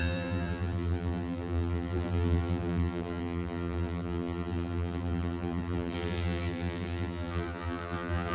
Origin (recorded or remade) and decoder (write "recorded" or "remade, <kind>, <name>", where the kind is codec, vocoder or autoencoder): remade, vocoder, BigVGAN v2